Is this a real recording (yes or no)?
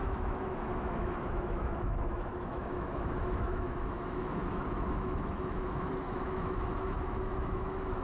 no